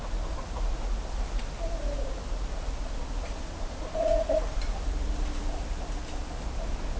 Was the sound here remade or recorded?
recorded